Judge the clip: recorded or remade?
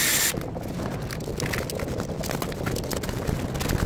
recorded